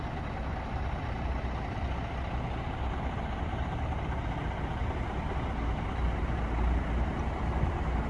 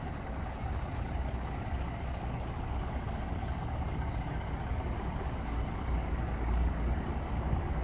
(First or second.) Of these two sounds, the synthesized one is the second